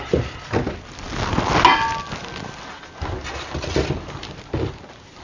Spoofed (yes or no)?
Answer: no